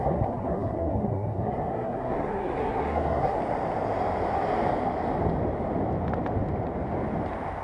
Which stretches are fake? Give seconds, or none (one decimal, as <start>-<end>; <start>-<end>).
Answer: 0.0-3.4